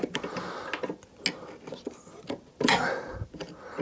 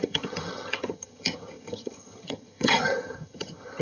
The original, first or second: first